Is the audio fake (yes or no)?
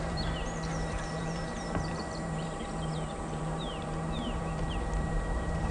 yes